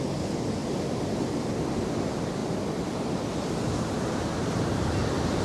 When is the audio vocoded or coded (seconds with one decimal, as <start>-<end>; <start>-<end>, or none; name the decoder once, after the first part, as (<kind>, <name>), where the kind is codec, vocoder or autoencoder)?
0.6-1.9 (vocoder, BigVGAN v2); 2.4-3.6